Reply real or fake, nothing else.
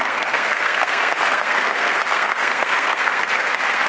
fake